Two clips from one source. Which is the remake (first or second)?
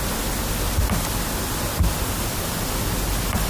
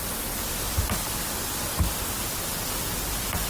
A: second